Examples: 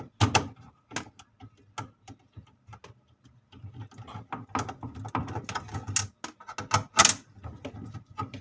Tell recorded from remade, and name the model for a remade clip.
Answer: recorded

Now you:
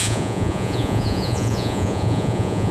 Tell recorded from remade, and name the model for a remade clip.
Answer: remade, vocoder, Vocos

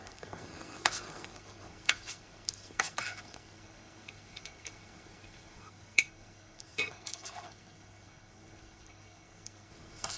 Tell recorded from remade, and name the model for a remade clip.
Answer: remade, codec, SNAC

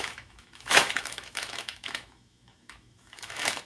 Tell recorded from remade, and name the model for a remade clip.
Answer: remade, autoencoder, DAC-VAE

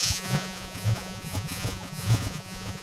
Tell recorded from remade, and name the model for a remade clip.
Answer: remade, vocoder, Vocos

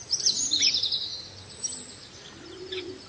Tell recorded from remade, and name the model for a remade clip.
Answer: recorded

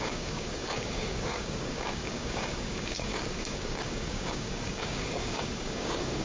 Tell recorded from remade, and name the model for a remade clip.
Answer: remade, codec, DAC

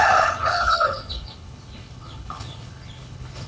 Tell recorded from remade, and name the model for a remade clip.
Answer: remade, codec, HILCodec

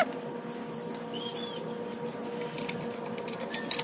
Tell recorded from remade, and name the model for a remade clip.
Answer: recorded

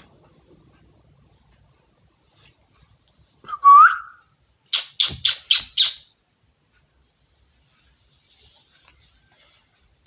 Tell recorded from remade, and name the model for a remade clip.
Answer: recorded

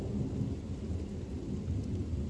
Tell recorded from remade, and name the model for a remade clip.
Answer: recorded